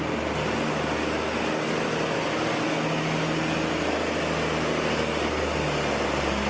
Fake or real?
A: real